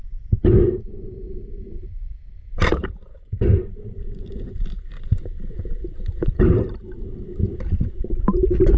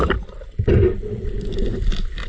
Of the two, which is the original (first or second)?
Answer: second